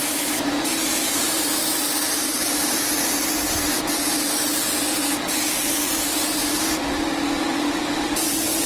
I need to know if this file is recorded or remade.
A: recorded